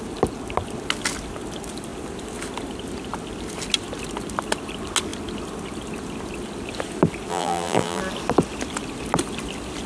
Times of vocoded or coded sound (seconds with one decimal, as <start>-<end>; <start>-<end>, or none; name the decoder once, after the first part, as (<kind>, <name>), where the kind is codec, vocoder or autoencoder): 7.3-8.0 (vocoder, BigVGAN v2)